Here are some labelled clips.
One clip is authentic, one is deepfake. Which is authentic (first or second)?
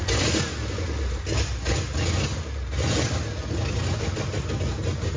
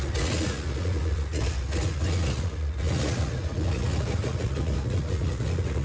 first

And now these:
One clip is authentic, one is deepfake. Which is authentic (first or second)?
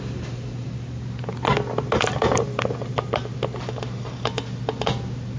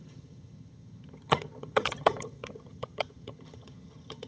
first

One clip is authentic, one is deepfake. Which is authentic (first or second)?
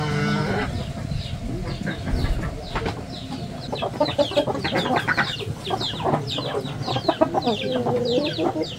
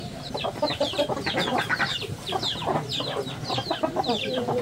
first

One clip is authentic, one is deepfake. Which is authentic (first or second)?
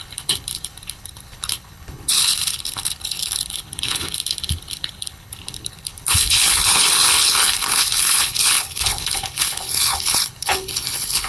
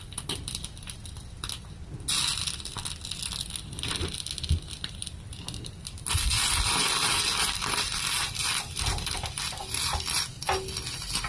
second